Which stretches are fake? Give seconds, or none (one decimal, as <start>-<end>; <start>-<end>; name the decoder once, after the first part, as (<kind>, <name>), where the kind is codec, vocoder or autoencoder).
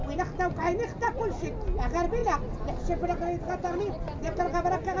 none